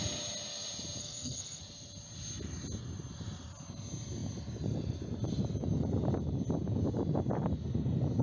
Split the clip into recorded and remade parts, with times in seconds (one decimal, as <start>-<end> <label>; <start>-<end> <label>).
0.0-1.0 recorded; 1.0-1.6 remade; 1.6-8.2 recorded

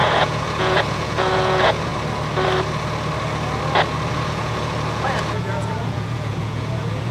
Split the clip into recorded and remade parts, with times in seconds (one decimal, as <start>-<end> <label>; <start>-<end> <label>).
0.0-1.9 remade; 1.9-4.1 recorded; 4.1-7.1 remade